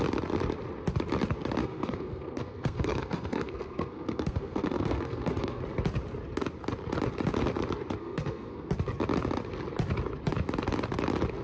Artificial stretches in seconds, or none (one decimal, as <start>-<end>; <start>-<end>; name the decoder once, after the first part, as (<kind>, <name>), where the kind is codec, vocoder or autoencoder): 1.6-5.6 (codec, SNAC); 8.0-8.7

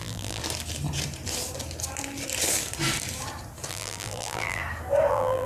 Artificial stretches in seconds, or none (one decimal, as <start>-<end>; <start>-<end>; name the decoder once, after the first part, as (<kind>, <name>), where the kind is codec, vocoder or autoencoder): 0.0-0.4 (vocoder, BigVGAN v2); 3.7-4.6; 5.1-5.5

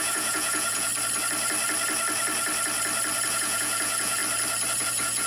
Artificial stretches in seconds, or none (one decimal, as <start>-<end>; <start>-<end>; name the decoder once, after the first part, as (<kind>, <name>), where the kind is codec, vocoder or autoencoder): 0.0-0.9 (vocoder, Vocos); 3.3-4.2; 4.8-5.3

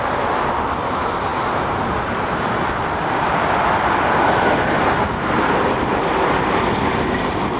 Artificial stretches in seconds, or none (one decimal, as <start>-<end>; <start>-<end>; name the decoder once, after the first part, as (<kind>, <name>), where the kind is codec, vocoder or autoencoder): none

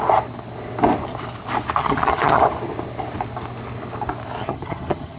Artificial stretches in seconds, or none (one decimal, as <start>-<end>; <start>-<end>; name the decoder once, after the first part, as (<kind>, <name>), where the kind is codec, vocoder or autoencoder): 1.8-2.4 (vocoder, HiFi-GAN); 4.4-5.2

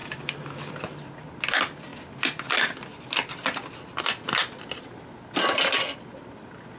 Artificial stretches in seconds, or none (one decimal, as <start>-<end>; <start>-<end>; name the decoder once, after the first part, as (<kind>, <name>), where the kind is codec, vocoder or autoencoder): none

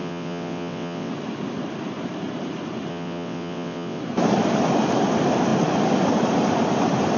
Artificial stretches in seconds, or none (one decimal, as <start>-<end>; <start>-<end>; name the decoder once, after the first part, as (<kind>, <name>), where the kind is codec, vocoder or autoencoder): 0.0-1.1 (vocoder, WaveNeXt); 2.9-4.0